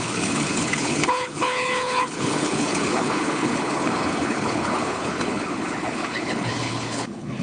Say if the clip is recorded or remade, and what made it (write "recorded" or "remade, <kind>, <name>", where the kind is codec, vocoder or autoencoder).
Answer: remade, codec, HILCodec